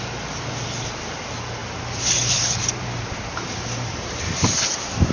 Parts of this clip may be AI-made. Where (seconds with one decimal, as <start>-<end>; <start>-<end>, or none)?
1.6-5.1